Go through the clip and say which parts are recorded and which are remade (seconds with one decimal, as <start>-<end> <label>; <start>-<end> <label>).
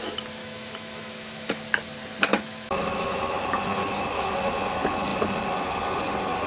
0.0-0.4 recorded; 0.4-1.6 remade; 1.6-2.3 recorded; 2.3-3.2 remade; 3.2-3.8 recorded; 3.8-4.5 remade; 4.5-6.5 recorded